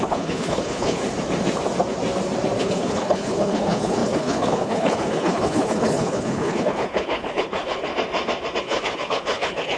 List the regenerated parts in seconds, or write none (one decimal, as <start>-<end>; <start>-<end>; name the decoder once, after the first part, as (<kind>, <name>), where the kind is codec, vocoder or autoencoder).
0.0-1.0 (codec, HILCodec); 2.6-7.9; 8.6-9.8